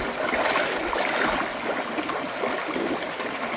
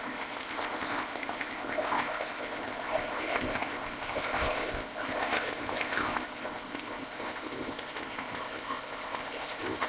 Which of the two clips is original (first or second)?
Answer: first